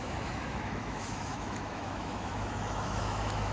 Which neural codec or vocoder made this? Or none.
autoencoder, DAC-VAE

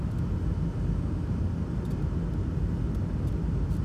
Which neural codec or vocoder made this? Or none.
none